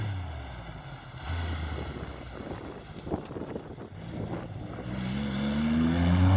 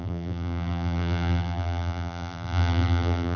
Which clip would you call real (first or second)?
first